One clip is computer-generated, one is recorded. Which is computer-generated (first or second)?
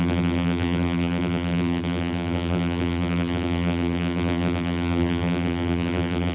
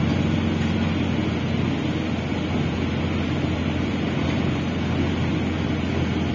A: first